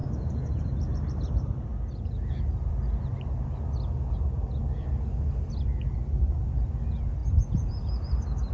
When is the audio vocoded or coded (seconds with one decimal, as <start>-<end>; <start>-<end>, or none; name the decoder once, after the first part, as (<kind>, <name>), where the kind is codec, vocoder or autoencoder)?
none

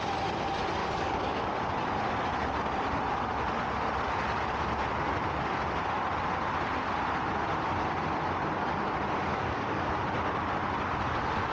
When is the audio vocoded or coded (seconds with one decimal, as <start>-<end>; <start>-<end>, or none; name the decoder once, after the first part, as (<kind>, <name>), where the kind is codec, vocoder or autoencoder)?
0.8-1.5 (codec, DAC); 9.3-9.9

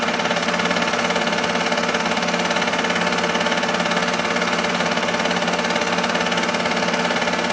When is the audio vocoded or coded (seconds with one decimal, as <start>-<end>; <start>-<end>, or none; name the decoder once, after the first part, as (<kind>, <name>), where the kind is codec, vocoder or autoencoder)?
none

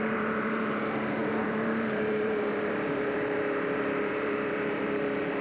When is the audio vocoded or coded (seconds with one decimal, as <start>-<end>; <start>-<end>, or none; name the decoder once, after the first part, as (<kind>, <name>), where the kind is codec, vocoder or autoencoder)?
0.0-5.4 (vocoder, BigVGAN v2)

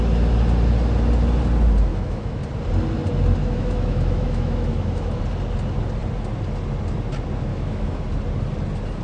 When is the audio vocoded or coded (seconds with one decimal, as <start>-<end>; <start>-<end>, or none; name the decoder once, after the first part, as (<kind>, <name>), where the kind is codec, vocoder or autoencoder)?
1.9-2.4 (autoencoder, DAC-VAE); 3.4-5.2; 7.5-8.0

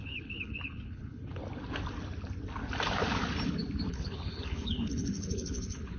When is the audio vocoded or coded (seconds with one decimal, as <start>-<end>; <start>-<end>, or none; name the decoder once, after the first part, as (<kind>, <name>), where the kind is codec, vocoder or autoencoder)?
0.0-1.4 (codec, HILCodec); 3.9-6.0

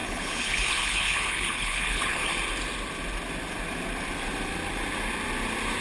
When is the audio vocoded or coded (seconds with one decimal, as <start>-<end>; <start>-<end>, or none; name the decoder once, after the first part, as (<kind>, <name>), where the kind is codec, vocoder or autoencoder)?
0.0-2.2 (codec, HILCodec)